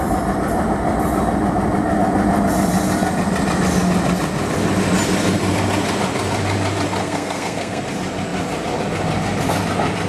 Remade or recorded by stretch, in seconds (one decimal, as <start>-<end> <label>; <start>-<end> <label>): 0.0-7.0 recorded; 7.0-7.8 remade; 7.8-10.1 recorded